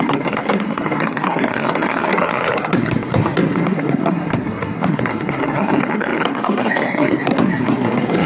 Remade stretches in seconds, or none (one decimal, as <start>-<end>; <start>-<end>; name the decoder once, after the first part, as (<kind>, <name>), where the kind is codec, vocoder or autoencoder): 0.0-8.3 (codec, SNAC)